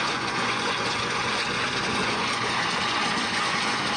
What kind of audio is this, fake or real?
fake